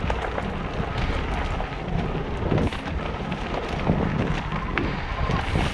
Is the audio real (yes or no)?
yes